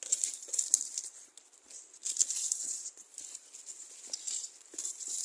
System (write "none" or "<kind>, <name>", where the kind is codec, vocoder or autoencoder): none